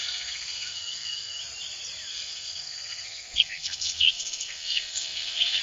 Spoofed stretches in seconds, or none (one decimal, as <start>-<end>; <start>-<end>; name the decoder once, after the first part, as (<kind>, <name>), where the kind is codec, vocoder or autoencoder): 0.0-1.4 (codec, SNAC); 2.1-5.6

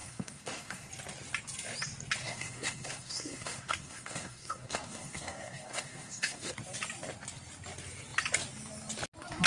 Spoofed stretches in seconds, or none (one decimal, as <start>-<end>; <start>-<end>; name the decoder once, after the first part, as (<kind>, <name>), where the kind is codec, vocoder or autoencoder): 0.0-0.9 (codec, SNAC); 2.2-6.5

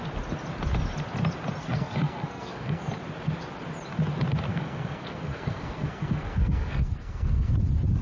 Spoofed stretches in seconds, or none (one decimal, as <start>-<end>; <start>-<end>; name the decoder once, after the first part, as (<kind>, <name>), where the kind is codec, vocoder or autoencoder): 1.6-2.9 (codec, SNAC); 4.5-7.5

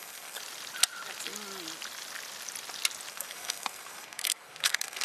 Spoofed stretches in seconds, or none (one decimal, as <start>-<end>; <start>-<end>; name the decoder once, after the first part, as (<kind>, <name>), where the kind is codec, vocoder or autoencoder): 0.0-0.4 (codec, SNAC); 3.1-5.0

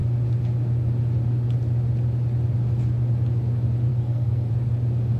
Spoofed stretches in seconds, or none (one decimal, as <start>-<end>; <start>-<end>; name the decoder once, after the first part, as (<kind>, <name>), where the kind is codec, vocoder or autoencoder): 3.9-4.5 (codec, SNAC)

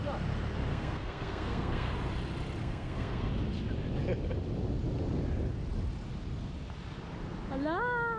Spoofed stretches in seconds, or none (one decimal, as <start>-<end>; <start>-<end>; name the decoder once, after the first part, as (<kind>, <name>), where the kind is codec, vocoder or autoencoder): 0.7-1.9 (codec, SNAC); 2.6-3.3

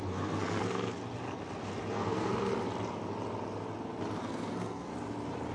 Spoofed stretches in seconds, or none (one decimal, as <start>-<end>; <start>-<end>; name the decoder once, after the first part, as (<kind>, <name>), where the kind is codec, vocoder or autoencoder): 0.0-1.0 (codec, SNAC); 1.9-2.5; 4.2-4.9